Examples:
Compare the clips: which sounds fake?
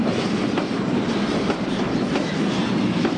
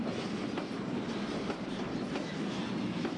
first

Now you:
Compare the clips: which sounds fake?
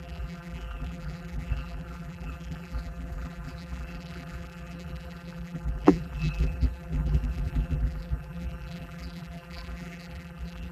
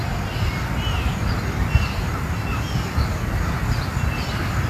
first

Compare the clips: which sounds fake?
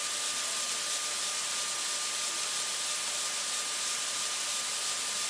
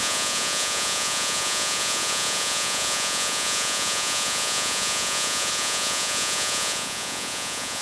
second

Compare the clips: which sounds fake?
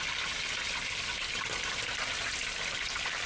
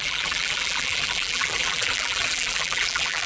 second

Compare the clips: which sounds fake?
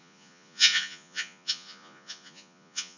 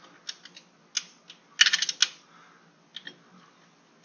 first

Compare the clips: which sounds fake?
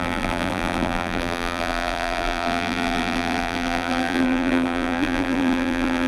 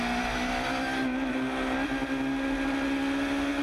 first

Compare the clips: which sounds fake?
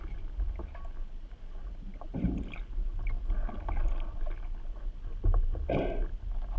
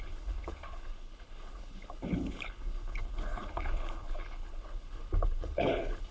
second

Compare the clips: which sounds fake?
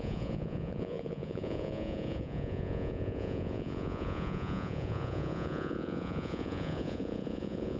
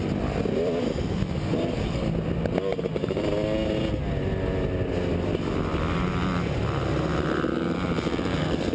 first